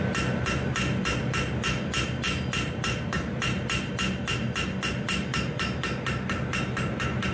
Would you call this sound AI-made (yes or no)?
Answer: no